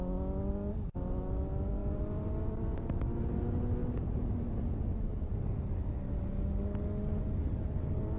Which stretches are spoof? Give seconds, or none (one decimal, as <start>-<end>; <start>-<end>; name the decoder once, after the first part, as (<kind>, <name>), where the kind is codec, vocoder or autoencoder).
none